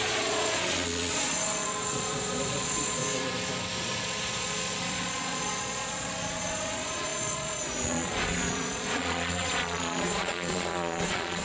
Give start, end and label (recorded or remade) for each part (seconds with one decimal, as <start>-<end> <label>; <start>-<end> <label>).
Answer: 0.0-3.0 remade; 3.0-3.8 recorded; 3.8-11.4 remade